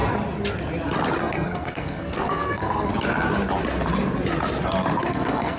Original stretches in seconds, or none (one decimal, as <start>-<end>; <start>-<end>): 0.0-1.2; 2.9-5.0

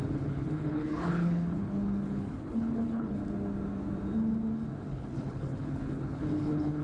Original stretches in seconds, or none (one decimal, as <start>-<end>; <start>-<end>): 3.2-4.9

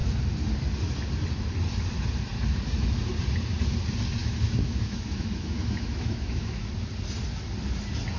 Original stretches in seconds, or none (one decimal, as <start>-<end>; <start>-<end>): 0.0-4.2; 6.7-8.2

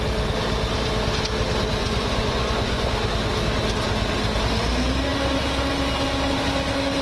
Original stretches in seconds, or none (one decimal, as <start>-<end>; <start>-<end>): 0.0-1.8; 2.9-7.0

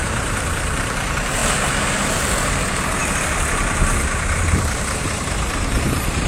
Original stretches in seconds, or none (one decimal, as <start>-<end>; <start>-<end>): 1.4-2.2; 3.0-4.3

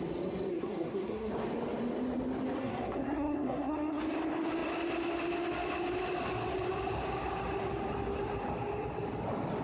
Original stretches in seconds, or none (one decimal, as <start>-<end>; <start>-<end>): 0.0-0.5; 1.3-2.6; 4.0-9.6

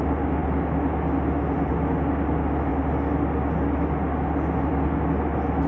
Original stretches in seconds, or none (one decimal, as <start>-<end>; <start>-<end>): 0.0-5.7